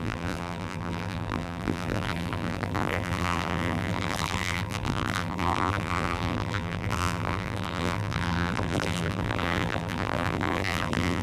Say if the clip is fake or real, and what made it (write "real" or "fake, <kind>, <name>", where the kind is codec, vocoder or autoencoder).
fake, vocoder, BigVGAN v2